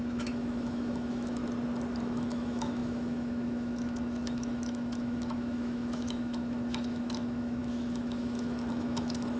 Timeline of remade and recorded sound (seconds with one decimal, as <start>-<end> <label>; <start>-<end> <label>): 0.0-1.4 remade; 1.4-2.0 recorded; 2.0-9.4 remade